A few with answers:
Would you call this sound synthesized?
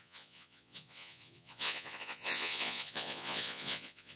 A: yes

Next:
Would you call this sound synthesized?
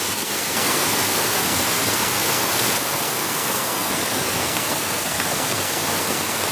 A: yes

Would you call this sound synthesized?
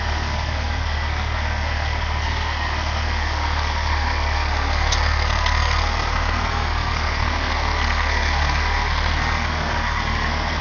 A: yes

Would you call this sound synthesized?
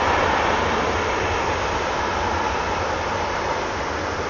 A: no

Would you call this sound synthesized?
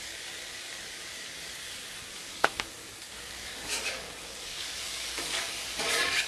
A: yes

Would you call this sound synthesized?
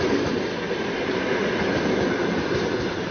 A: no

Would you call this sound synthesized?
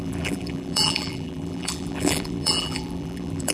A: yes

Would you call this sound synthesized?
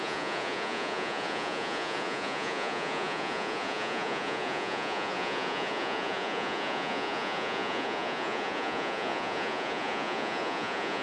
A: yes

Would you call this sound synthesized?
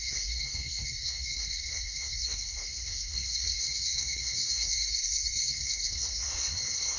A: yes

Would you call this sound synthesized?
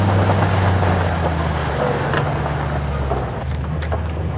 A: no